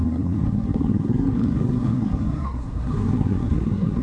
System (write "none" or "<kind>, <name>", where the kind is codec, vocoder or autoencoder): codec, SNAC